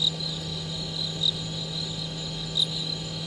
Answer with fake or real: real